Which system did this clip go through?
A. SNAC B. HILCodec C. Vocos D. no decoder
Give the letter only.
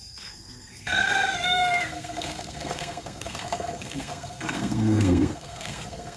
A